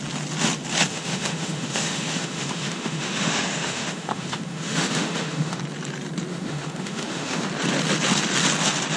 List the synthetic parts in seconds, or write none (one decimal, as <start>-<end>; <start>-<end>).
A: 0.9-5.6; 6.3-7.5